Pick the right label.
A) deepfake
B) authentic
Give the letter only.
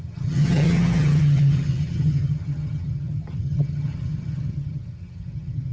A